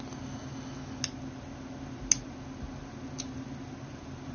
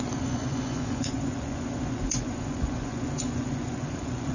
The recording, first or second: first